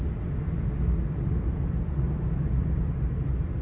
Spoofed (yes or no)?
no